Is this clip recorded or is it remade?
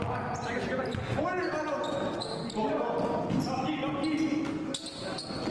recorded